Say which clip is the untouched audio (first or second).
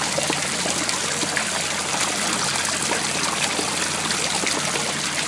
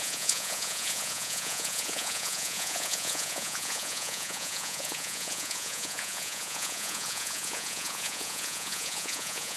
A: first